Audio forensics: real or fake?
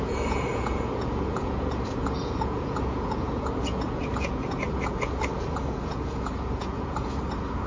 fake